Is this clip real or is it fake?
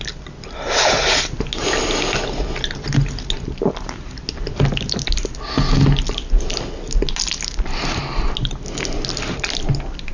real